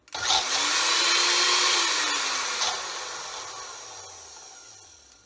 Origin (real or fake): real